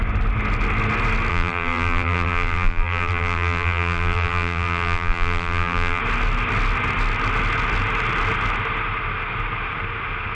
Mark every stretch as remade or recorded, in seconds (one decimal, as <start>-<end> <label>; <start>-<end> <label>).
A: 0.0-1.3 recorded; 1.3-6.0 remade; 6.0-10.3 recorded